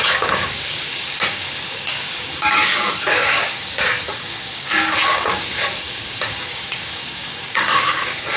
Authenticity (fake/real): fake